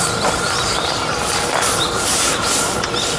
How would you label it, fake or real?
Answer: fake